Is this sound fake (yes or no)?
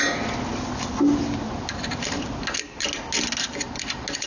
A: no